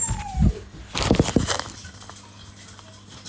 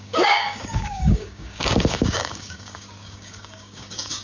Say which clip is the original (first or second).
first